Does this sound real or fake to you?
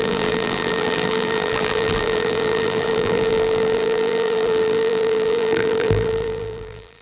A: fake